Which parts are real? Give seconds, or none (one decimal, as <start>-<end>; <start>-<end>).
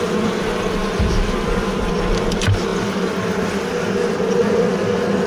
0.0-0.8; 1.9-2.7; 4.6-5.3